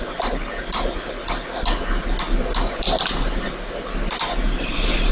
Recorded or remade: recorded